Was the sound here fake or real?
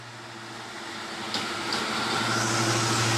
real